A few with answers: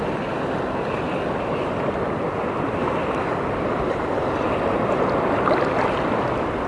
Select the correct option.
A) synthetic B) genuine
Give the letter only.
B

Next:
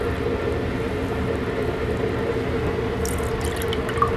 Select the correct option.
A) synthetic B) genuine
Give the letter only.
B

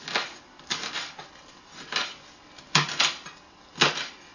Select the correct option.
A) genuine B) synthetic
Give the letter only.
A